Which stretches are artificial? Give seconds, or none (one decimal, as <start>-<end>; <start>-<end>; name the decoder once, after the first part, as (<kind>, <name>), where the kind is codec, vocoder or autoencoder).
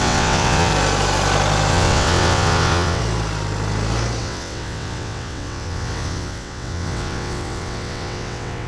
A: 0.0-0.7 (vocoder, WaveNeXt); 1.7-3.0; 4.2-8.7